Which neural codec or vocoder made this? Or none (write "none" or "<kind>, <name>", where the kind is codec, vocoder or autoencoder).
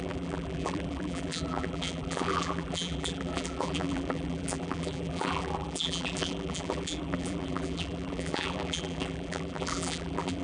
vocoder, BigVGAN v2